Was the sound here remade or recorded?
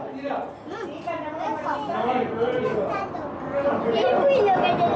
recorded